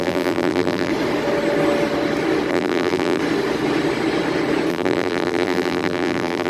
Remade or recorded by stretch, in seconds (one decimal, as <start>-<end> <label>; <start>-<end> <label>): 0.0-0.9 remade; 0.9-2.5 recorded; 2.5-3.2 remade; 3.2-4.7 recorded; 4.7-6.5 remade